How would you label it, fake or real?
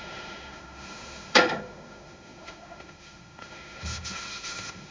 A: fake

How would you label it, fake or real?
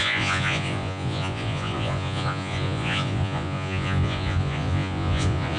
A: fake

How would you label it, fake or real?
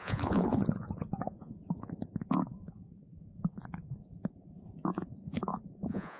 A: fake